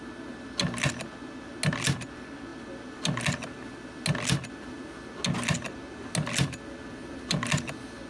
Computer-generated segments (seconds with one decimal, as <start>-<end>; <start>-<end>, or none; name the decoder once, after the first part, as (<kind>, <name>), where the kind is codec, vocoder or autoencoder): none